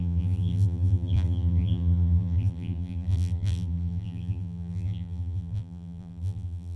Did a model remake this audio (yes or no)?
yes